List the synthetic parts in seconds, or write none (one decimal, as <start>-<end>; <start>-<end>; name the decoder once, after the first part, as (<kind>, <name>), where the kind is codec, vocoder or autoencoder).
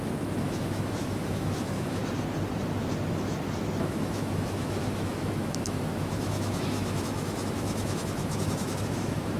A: 0.0-2.0 (autoencoder, DAC-VAE); 3.8-9.4